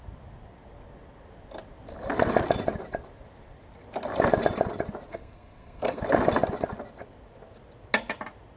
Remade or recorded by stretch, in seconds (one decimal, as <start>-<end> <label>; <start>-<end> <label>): 0.0-5.1 recorded; 5.1-6.0 remade; 6.0-8.6 recorded